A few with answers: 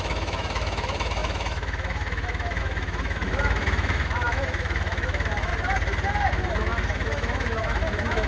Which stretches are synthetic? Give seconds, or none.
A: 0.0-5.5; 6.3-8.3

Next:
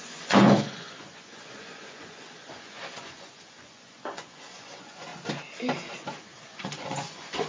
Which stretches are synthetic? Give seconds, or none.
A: 0.0-5.1; 6.2-7.5

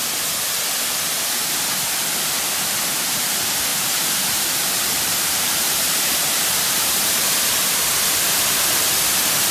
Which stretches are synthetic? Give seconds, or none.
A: 3.7-8.6

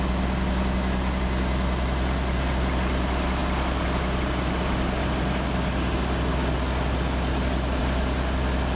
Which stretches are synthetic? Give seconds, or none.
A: none

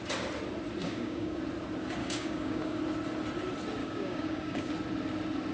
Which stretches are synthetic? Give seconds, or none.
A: 0.8-1.4; 2.0-2.8; 3.8-4.7

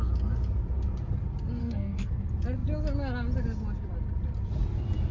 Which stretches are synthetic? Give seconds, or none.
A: 1.6-2.1